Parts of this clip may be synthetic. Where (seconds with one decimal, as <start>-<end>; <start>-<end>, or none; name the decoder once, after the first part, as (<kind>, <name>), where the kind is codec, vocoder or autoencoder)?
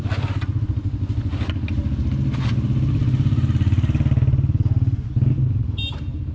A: none